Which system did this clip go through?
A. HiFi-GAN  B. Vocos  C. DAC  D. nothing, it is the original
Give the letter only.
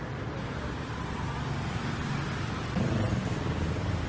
D